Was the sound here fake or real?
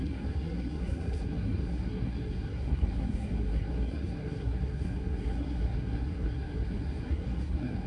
fake